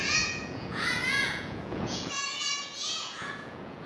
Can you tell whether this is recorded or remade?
remade